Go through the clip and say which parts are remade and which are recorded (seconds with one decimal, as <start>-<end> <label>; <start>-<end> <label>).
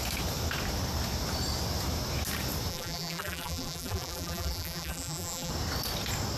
0.0-2.7 recorded; 2.7-5.5 remade; 5.5-6.4 recorded